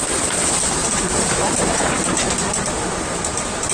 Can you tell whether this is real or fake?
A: fake